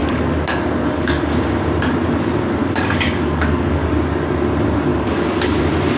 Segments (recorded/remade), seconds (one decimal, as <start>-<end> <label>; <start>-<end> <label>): 0.0-1.4 remade; 1.4-2.6 recorded; 2.6-3.9 remade; 3.9-4.9 recorded; 4.9-5.6 remade; 5.6-6.0 recorded